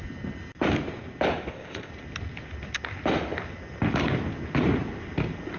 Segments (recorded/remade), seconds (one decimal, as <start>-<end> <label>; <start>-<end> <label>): 0.0-1.5 recorded; 1.5-1.9 remade; 1.9-5.6 recorded